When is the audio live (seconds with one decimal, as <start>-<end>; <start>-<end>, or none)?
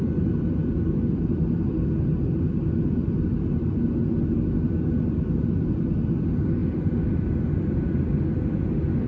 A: 0.0-9.1